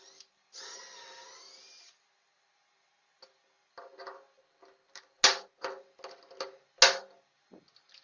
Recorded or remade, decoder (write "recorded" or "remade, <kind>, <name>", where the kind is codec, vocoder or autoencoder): recorded